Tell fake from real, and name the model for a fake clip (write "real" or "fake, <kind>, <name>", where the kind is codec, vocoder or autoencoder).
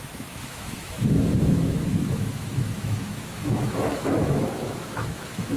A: fake, autoencoder, DAC-VAE